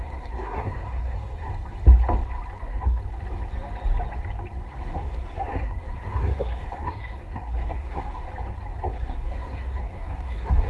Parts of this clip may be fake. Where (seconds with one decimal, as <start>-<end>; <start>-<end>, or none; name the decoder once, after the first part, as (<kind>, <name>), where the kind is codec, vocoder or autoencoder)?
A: 0.0-1.5 (codec, SNAC); 2.6-3.0; 4.8-8.3; 8.8-10.7